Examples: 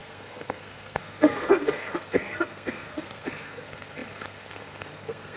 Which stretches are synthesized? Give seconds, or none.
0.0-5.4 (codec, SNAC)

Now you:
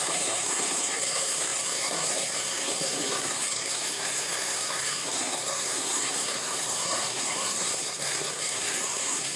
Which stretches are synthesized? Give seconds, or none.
0.0-9.4 (codec, SNAC)

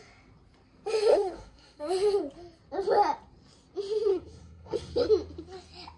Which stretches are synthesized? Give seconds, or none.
1.1-1.8 (codec, SNAC); 4.1-5.1

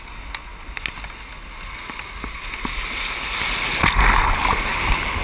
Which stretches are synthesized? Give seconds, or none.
none

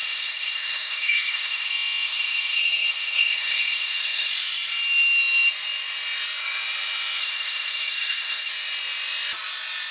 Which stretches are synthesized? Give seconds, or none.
0.0-4.3 (codec, SNAC); 7.2-8.5

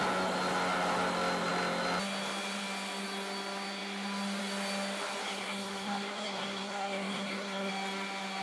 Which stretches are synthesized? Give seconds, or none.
5.2-7.7 (codec, SNAC)

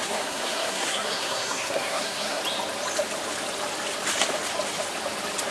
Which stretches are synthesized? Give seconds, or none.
0.0-2.4 (codec, SNAC)